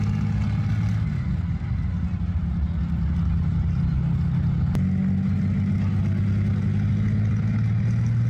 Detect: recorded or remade recorded